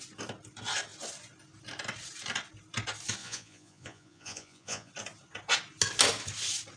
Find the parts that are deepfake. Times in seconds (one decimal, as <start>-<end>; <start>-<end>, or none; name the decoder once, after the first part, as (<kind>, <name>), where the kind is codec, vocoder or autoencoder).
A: 3.2-4.9 (vocoder, Vocos)